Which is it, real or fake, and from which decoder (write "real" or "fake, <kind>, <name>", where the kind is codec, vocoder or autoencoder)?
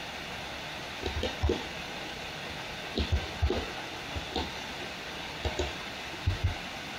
real